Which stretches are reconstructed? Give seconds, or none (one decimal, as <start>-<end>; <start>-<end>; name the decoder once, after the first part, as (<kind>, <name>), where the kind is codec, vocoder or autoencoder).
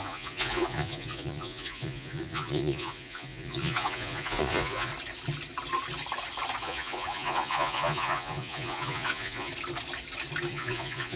0.0-4.9 (vocoder, Vocos); 6.6-9.5; 10.5-11.2